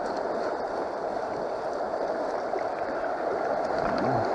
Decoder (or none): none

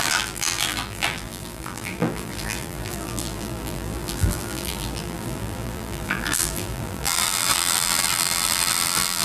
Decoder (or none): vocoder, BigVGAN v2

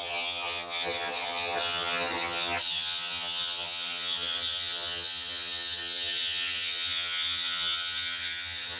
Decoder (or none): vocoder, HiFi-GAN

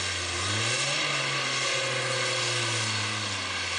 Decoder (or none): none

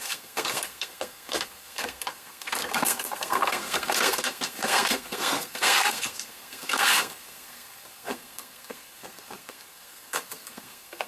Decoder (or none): codec, SNAC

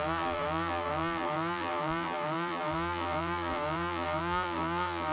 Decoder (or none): vocoder, BigVGAN v2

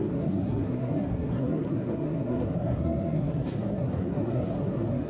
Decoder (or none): codec, SNAC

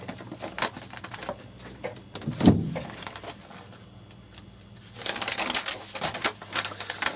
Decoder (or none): none